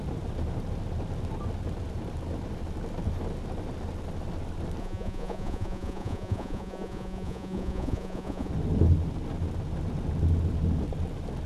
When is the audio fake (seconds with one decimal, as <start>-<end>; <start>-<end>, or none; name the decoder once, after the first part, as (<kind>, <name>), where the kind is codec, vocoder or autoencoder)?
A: 4.8-8.5 (vocoder, Vocos)